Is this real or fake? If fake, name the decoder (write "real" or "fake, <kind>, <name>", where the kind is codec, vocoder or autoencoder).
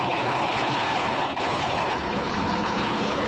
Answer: fake, codec, HILCodec